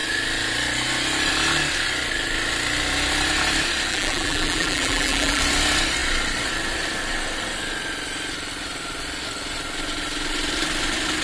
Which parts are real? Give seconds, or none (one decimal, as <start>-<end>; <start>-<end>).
0.0-3.9; 5.4-11.2